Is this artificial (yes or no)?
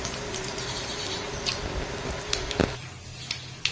no